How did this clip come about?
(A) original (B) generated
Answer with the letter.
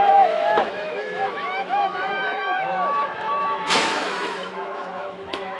B